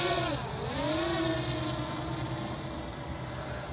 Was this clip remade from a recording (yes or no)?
no